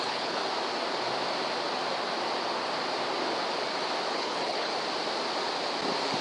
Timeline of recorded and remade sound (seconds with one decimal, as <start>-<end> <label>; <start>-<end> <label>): 0.0-0.4 remade; 0.4-4.1 recorded; 4.1-4.7 remade; 4.7-6.2 recorded